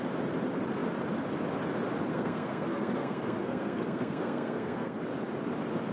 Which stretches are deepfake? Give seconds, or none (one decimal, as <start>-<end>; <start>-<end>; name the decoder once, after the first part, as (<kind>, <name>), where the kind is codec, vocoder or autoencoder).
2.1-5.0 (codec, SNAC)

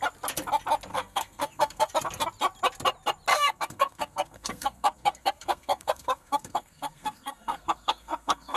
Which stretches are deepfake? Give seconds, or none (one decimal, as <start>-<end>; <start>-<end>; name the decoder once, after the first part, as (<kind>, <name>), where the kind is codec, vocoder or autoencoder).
0.9-1.9 (codec, SNAC); 3.3-8.6

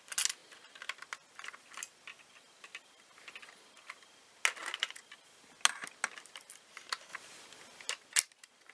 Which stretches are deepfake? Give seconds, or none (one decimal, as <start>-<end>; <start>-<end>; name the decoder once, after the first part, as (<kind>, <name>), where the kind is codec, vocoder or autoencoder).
none